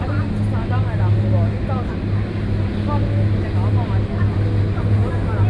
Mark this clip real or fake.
real